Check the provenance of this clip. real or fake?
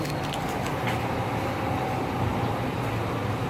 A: real